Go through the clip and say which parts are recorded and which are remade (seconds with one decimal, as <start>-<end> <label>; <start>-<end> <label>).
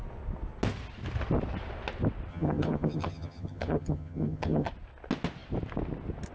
0.0-2.3 recorded; 2.3-4.7 remade; 4.7-6.3 recorded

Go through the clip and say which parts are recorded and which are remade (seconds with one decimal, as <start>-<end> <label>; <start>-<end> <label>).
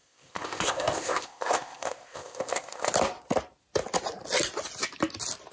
0.0-2.9 remade; 2.9-5.5 recorded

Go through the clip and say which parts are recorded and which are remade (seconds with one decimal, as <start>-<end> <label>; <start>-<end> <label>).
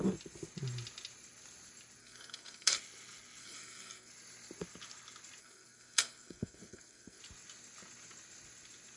0.0-2.0 recorded; 2.0-2.8 remade; 2.8-3.4 recorded; 3.4-4.1 remade; 4.1-5.4 recorded; 5.4-7.2 remade; 7.2-9.0 recorded